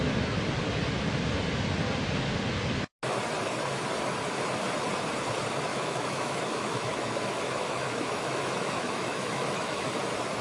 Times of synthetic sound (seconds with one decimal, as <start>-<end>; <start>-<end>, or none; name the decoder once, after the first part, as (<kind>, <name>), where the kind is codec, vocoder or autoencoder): 5.7-10.0 (autoencoder, DAC-VAE)